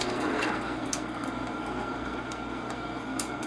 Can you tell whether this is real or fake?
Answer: fake